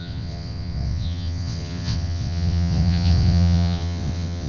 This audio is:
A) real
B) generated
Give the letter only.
B